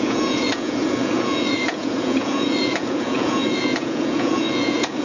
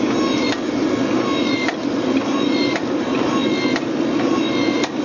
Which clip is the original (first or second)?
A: second